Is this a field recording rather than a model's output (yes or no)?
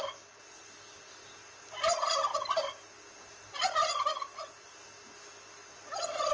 yes